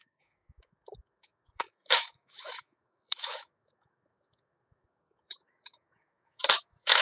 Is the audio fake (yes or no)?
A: yes